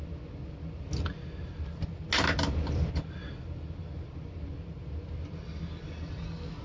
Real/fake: real